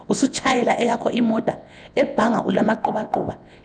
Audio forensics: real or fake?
fake